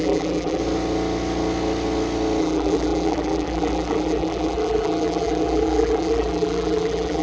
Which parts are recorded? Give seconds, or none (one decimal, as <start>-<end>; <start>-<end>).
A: 0.6-2.4